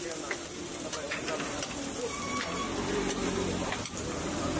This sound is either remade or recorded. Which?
recorded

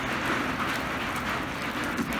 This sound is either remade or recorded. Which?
recorded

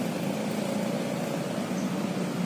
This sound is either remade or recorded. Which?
remade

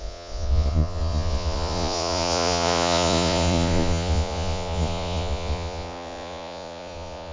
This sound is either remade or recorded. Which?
remade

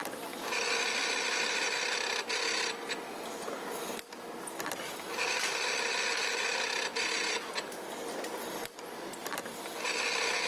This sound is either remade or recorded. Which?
recorded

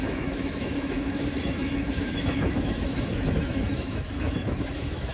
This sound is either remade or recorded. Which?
remade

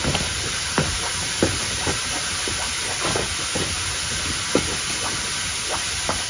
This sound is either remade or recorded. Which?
recorded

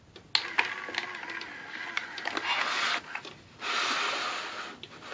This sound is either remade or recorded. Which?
recorded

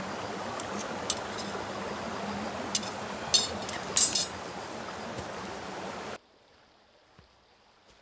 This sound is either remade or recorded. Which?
recorded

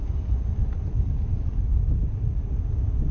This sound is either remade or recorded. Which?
recorded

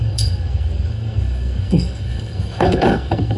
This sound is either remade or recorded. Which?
remade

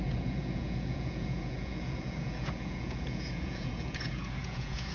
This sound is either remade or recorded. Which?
remade